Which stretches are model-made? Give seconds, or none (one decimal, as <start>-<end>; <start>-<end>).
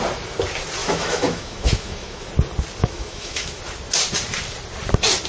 0.8-2.3; 2.8-3.6